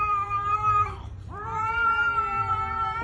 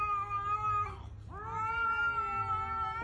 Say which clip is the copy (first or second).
first